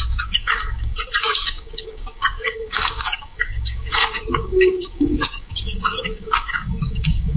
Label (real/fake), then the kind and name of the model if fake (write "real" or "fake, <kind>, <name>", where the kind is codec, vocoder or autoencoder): fake, codec, DAC